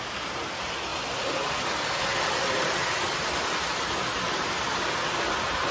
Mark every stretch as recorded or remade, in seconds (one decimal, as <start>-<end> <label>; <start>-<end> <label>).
0.0-5.7 recorded